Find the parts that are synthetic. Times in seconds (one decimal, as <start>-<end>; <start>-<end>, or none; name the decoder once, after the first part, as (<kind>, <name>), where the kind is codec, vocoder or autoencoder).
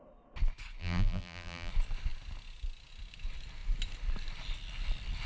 0.8-1.7 (vocoder, BigVGAN v2)